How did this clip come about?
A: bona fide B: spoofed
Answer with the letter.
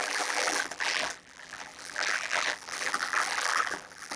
B